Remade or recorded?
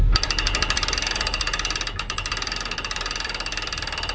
remade